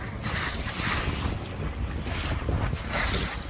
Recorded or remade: recorded